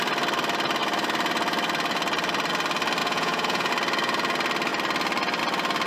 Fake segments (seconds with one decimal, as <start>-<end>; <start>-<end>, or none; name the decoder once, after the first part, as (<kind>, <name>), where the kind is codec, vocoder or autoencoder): 3.0-3.7 (vocoder, Vocos)